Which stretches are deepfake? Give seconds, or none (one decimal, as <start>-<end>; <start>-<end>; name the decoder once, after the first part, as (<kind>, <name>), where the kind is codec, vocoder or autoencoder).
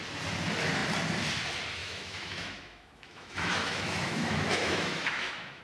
1.8-5.6 (autoencoder, DAC-VAE)